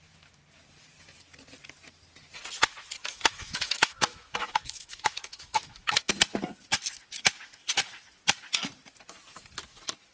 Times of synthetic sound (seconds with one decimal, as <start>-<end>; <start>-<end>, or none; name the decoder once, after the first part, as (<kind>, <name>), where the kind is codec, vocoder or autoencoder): 3.0-6.1 (autoencoder, DAC-VAE)